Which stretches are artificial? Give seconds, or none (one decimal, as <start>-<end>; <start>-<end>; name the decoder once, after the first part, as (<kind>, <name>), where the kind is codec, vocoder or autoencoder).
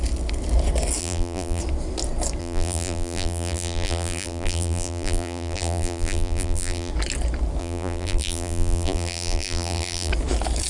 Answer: 1.0-1.6 (vocoder, BigVGAN v2); 2.4-6.9; 7.6-10.1